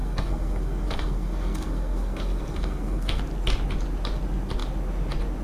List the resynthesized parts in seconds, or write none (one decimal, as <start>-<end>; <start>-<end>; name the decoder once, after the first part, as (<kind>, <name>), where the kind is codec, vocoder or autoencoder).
0.0-3.2 (codec, SNAC)